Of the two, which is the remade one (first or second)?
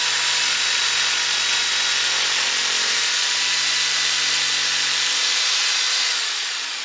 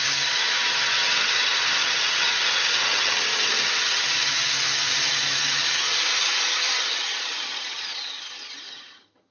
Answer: second